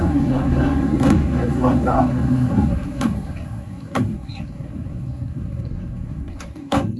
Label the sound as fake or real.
fake